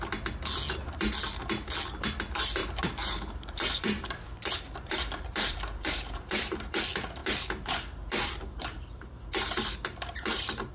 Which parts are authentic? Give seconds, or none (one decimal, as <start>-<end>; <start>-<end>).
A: 0.0-2.6; 6.7-7.2